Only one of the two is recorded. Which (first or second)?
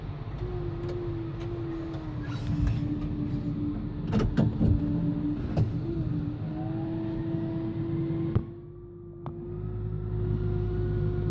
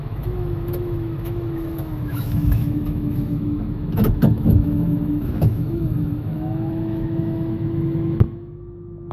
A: first